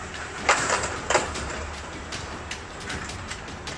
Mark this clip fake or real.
fake